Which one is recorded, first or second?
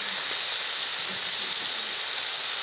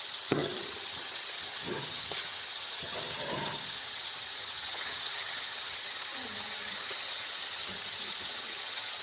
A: first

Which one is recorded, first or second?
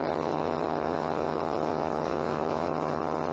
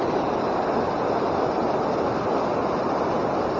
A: second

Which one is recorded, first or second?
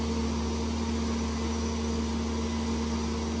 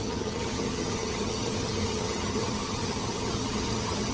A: first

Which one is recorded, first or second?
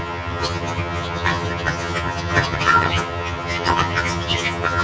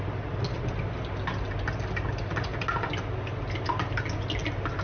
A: second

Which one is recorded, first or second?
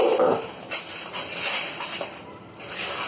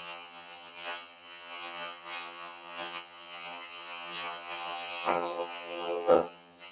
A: first